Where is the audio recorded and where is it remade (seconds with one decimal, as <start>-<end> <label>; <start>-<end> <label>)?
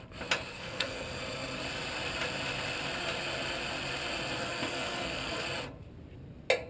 0.0-0.5 recorded; 0.5-1.2 remade; 1.2-4.4 recorded; 4.4-5.4 remade; 5.4-6.7 recorded